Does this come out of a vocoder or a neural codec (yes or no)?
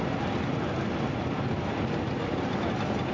no